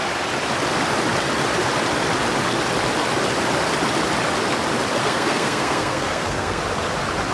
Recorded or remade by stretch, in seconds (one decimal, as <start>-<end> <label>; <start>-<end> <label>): 0.0-5.0 recorded; 5.0-6.6 remade; 6.6-7.3 recorded